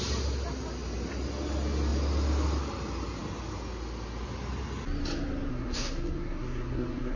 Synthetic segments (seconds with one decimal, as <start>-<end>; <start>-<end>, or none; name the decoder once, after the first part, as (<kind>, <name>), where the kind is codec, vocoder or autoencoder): 5.5-7.2 (codec, SNAC)